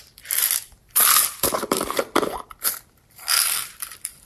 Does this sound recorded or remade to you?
remade